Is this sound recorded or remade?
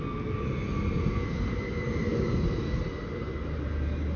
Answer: recorded